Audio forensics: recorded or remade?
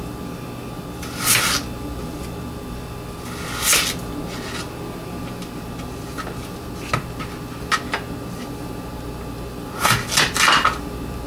recorded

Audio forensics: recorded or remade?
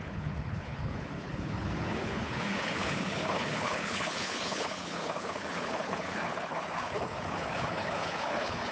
remade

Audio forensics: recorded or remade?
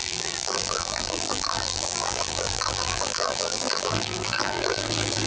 remade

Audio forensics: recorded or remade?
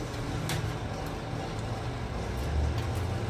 recorded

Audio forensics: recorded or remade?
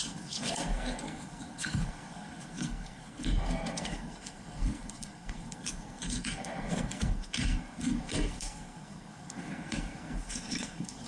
remade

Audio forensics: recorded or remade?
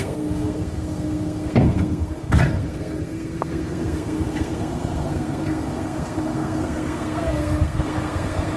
remade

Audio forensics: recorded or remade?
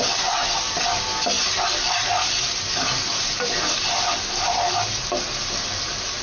recorded